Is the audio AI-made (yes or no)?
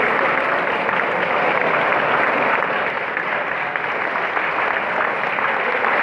no